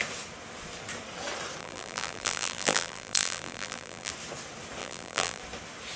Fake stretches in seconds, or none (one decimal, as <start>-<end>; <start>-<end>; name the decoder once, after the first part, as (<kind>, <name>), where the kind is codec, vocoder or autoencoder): 1.6-4.1 (vocoder, BigVGAN v2); 4.8-5.4